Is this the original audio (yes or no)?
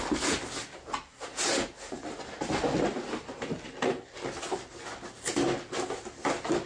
yes